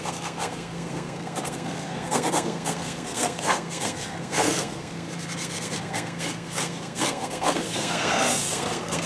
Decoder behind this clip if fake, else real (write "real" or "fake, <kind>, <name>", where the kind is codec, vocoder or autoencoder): fake, codec, SNAC